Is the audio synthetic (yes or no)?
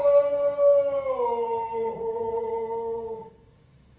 yes